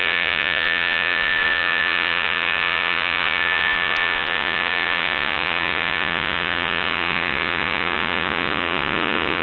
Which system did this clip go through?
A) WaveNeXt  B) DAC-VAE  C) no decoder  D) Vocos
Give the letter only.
D